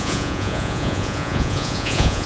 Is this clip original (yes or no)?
no